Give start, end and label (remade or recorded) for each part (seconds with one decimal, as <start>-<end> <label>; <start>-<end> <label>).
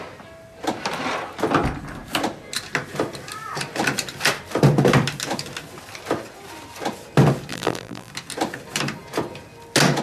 0.0-7.5 recorded; 7.5-8.1 remade; 8.1-10.0 recorded